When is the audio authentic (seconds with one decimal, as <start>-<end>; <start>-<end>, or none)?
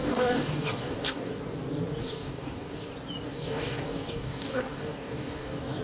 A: 1.4-2.0; 2.9-3.3